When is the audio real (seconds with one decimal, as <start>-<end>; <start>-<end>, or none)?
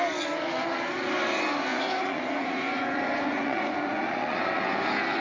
0.0-1.7; 4.8-5.2